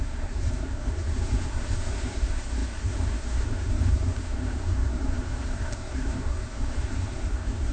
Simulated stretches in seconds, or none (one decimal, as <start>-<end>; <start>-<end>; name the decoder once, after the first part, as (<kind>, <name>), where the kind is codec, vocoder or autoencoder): 0.0-7.7 (codec, SNAC)